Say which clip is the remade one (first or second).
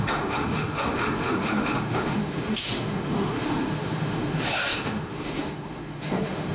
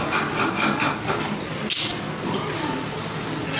first